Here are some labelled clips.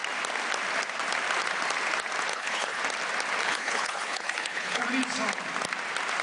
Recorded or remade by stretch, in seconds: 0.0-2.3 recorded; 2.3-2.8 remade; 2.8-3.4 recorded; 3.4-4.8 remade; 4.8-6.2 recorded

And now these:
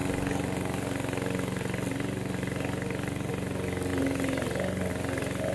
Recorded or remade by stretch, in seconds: 0.0-5.5 recorded

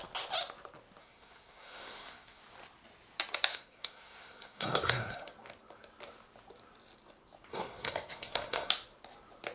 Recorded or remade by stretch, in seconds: 0.0-1.0 recorded; 1.0-2.4 remade; 2.4-3.5 recorded; 3.5-5.3 remade; 5.3-7.5 recorded; 7.5-8.7 remade; 8.7-9.5 recorded

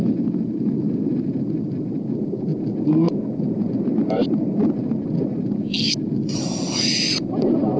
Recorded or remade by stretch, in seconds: 0.0-7.8 recorded

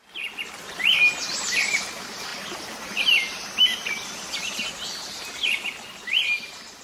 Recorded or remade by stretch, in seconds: 0.0-6.8 recorded

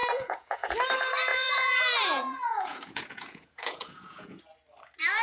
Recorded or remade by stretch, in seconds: 0.0-0.7 remade; 0.7-1.3 recorded; 1.3-4.4 remade; 4.4-5.2 recorded

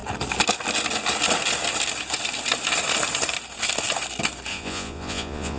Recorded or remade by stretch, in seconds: 0.0-4.5 recorded; 4.5-5.6 remade